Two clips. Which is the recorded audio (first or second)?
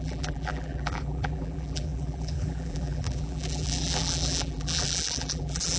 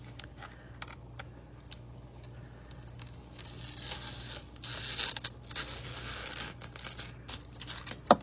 second